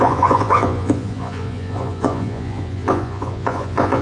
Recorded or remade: remade